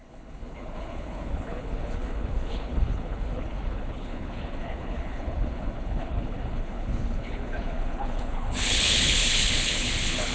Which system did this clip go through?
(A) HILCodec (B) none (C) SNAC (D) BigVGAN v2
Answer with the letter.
A